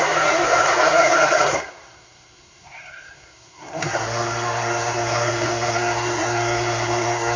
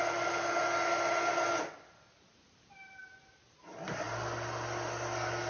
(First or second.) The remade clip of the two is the first